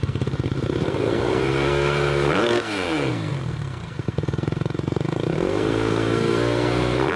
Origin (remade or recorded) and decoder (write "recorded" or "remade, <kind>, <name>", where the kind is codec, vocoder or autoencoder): remade, codec, SNAC